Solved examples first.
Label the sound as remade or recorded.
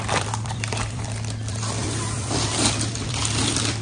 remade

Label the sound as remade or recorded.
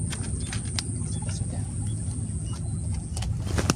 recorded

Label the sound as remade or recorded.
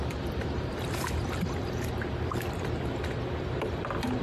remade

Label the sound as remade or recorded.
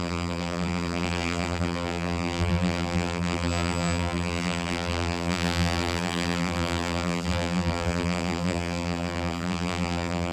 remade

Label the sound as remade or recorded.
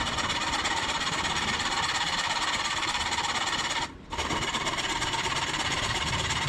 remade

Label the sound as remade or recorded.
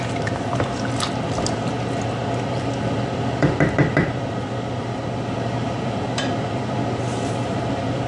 remade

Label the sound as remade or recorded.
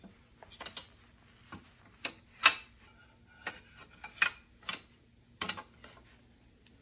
recorded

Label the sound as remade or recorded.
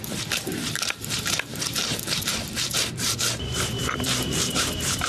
remade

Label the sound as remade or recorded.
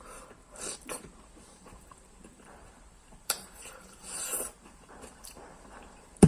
remade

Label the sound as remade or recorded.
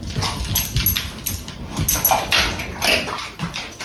recorded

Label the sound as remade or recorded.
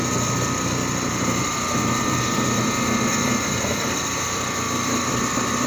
remade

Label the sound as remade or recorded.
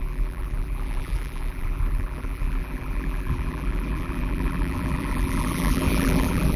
remade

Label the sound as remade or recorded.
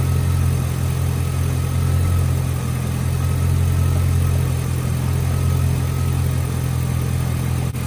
recorded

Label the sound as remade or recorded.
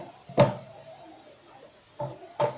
recorded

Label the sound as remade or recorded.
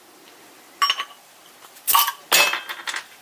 recorded